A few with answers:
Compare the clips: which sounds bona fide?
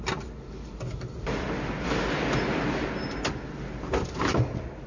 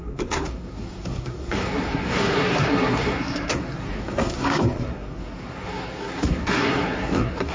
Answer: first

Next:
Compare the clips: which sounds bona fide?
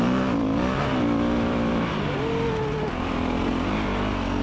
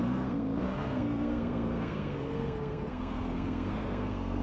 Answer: first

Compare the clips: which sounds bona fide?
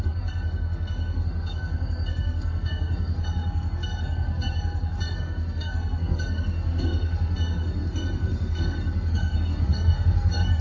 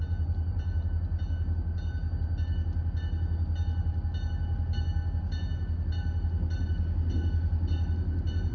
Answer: second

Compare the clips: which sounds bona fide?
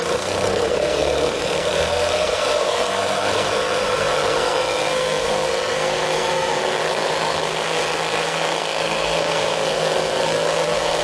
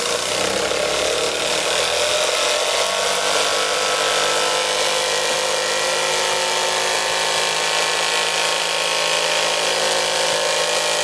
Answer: second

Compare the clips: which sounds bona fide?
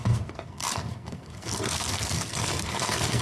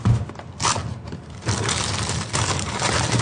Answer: second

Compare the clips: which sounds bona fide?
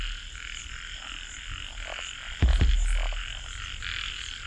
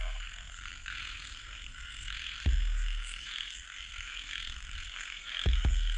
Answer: first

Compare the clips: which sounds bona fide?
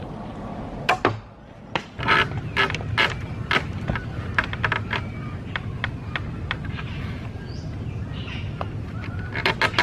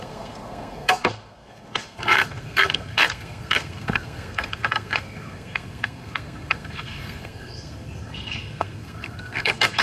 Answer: first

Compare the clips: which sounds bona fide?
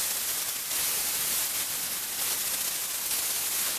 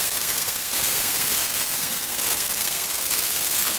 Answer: first